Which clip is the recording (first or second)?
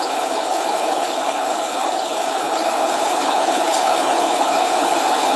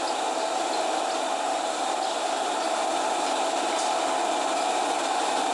second